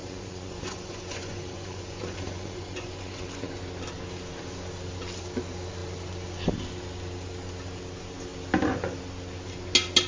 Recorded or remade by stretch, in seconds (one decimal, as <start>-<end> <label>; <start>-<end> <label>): 0.0-3.6 remade; 3.6-10.1 recorded